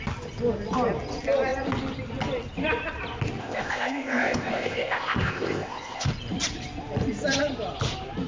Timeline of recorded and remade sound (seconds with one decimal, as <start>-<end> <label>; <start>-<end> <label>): 0.0-3.4 recorded; 3.4-6.1 remade; 6.1-8.3 recorded